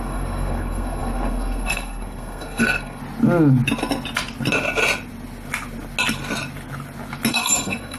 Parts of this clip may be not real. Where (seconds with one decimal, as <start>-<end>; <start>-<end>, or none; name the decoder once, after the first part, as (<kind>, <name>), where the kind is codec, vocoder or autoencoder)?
0.0-3.0 (codec, SNAC); 7.3-8.0